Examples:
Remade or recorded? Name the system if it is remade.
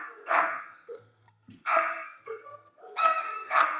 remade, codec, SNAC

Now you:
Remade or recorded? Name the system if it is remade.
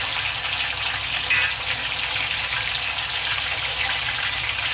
recorded